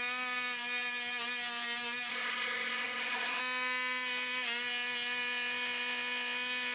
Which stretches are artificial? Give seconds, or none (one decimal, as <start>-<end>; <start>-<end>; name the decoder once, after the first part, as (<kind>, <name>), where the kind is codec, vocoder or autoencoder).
2.1-3.4 (codec, SNAC)